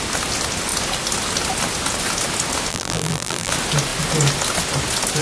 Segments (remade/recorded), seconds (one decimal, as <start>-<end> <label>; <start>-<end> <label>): 0.0-2.7 recorded; 2.7-3.5 remade; 3.5-5.2 recorded